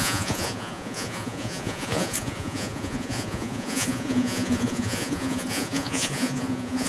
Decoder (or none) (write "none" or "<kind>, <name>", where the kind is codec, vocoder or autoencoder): vocoder, Vocos